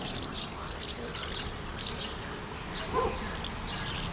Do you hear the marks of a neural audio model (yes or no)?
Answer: no